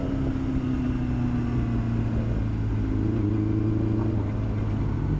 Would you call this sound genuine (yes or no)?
yes